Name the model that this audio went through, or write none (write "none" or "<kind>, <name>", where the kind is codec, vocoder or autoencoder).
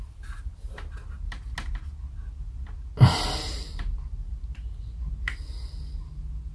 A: none